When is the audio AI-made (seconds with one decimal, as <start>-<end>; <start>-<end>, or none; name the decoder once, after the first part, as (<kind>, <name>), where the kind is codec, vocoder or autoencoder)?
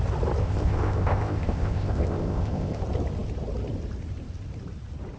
0.4-2.8 (codec, ZipCodec)